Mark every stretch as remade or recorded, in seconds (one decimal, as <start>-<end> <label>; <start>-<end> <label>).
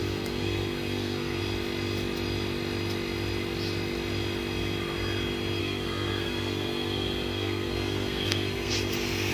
0.0-1.4 remade; 1.4-5.6 recorded; 5.6-8.7 remade; 8.7-9.3 recorded